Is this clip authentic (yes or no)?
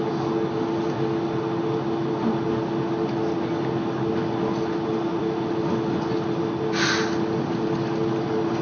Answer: yes